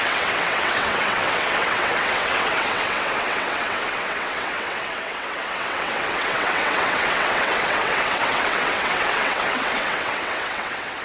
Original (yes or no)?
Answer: no